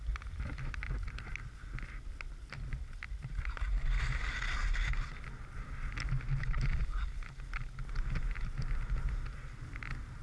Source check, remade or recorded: recorded